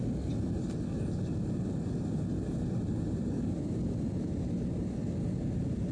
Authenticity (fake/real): real